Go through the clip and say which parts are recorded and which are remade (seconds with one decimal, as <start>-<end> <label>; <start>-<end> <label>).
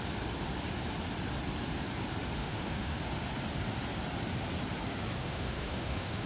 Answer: 0.0-2.4 recorded; 2.4-3.0 remade; 3.0-5.2 recorded; 5.2-6.3 remade